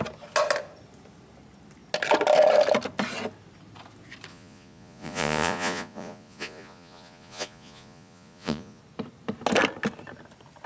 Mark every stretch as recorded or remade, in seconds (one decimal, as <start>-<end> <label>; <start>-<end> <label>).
0.0-4.3 recorded; 4.3-8.8 remade; 8.8-10.7 recorded

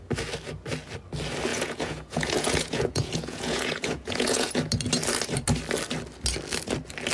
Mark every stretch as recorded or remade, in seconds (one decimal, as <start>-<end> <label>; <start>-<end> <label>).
0.0-1.5 recorded; 1.5-4.5 remade; 4.5-7.1 recorded

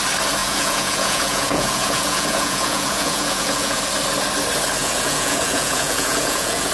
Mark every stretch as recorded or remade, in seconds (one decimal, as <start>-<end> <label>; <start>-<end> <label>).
0.0-0.4 recorded; 0.4-3.8 remade; 3.8-4.8 recorded; 4.8-6.7 remade

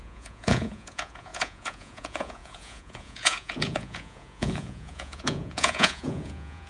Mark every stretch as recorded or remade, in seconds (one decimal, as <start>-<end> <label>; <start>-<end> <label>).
0.0-6.7 remade

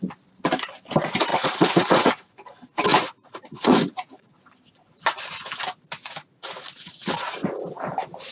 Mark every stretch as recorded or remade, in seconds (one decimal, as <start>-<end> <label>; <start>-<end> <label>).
0.0-1.3 recorded; 1.3-2.1 remade; 2.1-2.9 recorded; 2.9-4.3 remade; 4.3-6.0 recorded; 6.0-7.1 remade; 7.1-8.3 recorded